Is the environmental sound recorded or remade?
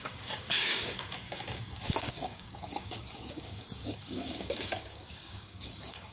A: remade